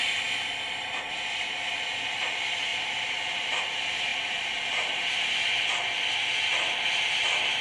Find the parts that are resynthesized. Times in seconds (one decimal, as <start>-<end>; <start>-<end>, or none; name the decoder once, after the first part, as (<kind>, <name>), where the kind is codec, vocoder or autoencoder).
2.7-3.6 (vocoder, BigVGAN v2); 4.1-5.6; 6.5-7.6